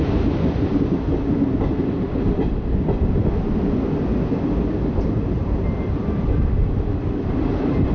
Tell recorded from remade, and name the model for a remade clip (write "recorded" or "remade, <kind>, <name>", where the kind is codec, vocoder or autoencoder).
recorded